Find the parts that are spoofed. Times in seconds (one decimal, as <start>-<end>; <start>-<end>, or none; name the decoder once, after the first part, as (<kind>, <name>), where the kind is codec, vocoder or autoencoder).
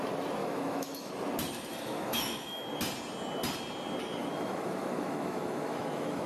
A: 0.4-1.1 (autoencoder, DAC-VAE); 1.7-2.6; 4.2-6.3